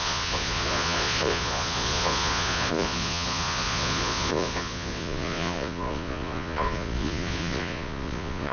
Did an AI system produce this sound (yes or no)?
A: yes